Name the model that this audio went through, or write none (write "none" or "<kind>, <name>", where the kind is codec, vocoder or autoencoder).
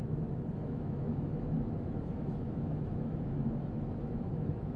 autoencoder, DAC-VAE